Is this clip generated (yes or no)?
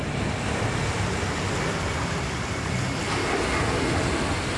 no